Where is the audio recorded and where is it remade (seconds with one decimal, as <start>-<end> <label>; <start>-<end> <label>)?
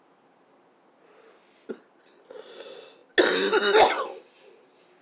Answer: 0.0-5.0 recorded